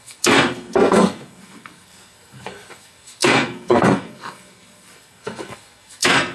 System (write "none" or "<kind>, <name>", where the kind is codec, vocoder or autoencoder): codec, SNAC